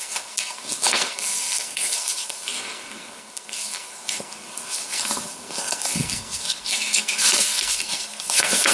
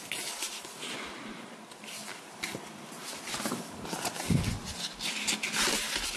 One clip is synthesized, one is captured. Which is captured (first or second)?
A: second